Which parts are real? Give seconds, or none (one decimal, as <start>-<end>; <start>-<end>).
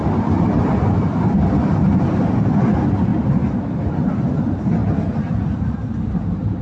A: 0.0-6.6